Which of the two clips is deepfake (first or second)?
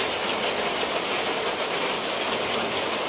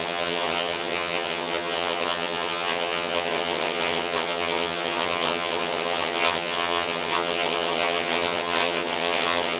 second